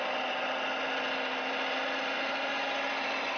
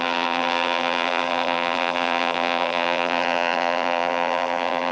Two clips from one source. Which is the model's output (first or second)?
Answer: second